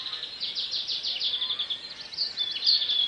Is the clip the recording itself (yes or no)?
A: yes